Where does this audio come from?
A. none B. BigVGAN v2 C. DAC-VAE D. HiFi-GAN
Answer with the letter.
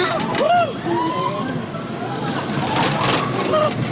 A